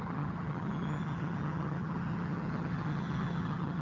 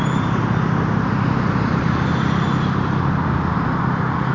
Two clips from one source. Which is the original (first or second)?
second